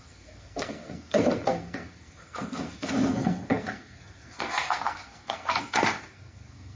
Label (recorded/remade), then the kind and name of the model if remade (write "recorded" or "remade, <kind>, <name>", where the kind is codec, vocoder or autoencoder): remade, codec, SNAC